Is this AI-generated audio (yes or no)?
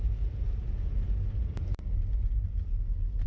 no